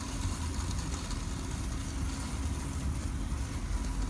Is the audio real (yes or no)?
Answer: yes